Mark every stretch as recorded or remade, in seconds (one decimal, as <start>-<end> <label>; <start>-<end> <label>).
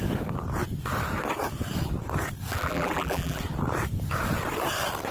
0.0-2.5 recorded; 2.5-3.4 remade; 3.4-5.1 recorded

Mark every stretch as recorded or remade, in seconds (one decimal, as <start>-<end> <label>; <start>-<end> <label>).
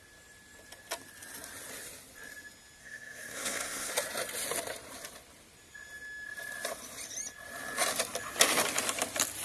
0.0-2.8 recorded; 2.8-3.9 remade; 3.9-9.4 recorded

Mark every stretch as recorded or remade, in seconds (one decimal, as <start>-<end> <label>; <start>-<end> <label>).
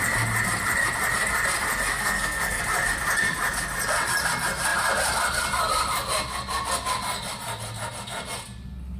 0.0-1.9 recorded; 1.9-2.6 remade; 2.6-9.0 recorded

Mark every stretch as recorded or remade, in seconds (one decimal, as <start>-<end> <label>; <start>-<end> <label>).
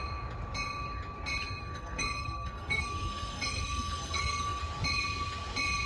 0.0-1.6 recorded; 1.6-4.6 remade; 4.6-5.9 recorded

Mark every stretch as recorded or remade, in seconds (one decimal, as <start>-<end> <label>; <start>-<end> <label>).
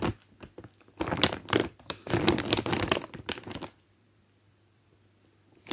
0.0-1.6 recorded; 1.6-5.0 remade; 5.0-5.7 recorded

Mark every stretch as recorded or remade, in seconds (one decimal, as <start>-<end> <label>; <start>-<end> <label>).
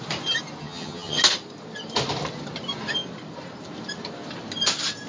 0.0-0.6 recorded; 0.6-1.2 remade; 1.2-5.1 recorded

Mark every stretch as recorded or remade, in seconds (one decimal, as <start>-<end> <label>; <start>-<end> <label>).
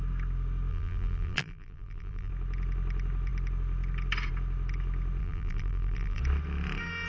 0.0-0.7 recorded; 0.7-2.3 remade; 2.3-5.2 recorded; 5.2-6.2 remade; 6.2-7.1 recorded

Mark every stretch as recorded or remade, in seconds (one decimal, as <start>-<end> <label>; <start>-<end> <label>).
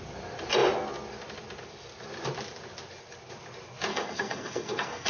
0.0-3.9 recorded; 3.9-5.1 remade